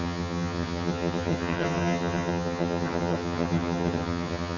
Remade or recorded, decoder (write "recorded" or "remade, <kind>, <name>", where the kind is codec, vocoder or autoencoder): remade, vocoder, HiFi-GAN